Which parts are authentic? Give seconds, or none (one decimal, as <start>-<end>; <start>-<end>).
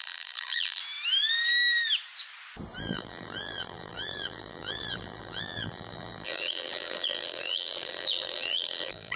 0.8-2.8